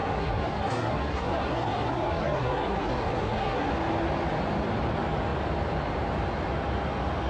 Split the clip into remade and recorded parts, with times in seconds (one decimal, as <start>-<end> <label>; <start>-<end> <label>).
0.0-3.7 remade; 3.7-7.3 recorded